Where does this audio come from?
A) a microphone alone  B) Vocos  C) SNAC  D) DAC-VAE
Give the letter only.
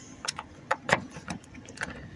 B